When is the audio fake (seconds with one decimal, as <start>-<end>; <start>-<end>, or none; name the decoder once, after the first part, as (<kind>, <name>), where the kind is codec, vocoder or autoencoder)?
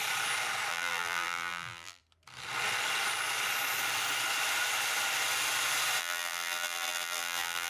0.7-2.0 (vocoder, BigVGAN v2); 6.0-7.7